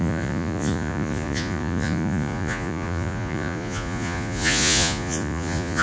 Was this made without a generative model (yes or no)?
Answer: no